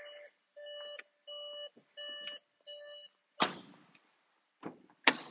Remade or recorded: recorded